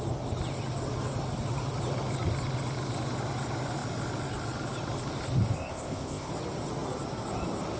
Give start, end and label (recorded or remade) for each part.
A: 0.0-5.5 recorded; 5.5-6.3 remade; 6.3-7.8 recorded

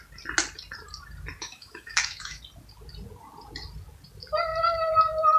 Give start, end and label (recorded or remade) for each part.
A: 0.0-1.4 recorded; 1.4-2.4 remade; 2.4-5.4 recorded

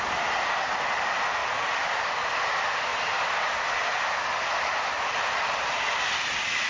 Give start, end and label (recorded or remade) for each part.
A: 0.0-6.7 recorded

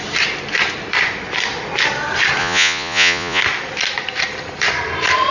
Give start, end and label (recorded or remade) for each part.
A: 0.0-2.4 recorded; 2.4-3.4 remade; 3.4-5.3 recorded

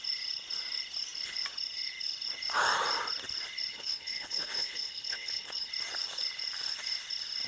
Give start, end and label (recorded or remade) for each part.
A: 0.0-3.7 recorded; 3.7-5.7 remade; 5.7-7.5 recorded